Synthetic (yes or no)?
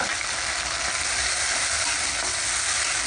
no